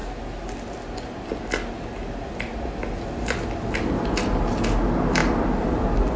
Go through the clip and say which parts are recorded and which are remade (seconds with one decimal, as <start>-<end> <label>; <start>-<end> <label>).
0.0-6.2 recorded